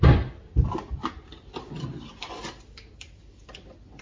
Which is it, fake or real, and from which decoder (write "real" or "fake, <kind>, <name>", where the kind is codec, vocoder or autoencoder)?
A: real